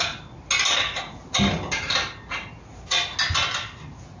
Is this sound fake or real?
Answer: real